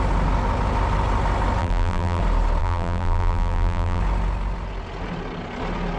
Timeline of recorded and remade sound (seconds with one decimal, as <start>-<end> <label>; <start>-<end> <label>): 0.0-1.6 recorded; 1.6-2.2 remade; 2.2-2.6 recorded; 2.6-4.0 remade; 4.0-6.0 recorded